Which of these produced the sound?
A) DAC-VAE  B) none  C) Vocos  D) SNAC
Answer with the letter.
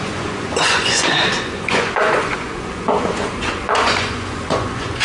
C